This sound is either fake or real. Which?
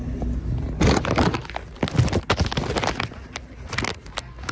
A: real